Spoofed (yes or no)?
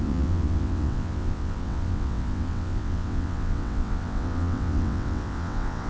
yes